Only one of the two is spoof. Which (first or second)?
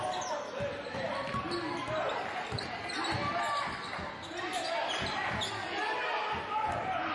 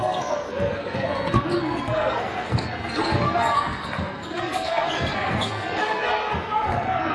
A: second